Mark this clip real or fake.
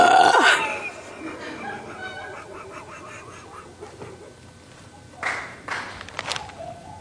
real